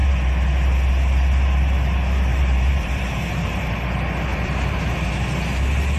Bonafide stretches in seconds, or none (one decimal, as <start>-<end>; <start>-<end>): 0.0-2.3; 3.7-4.3; 4.8-6.0